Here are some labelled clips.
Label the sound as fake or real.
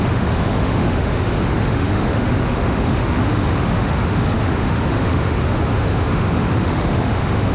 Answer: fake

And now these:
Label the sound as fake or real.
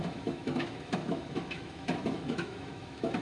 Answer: fake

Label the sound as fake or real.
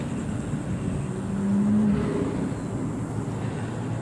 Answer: real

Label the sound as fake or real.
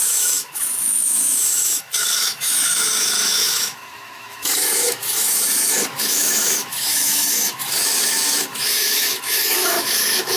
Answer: fake